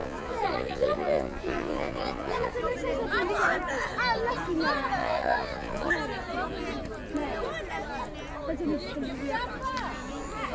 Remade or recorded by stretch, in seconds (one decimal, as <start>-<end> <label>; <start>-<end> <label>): 0.0-2.5 remade; 2.5-5.0 recorded; 5.0-5.9 remade; 5.9-10.5 recorded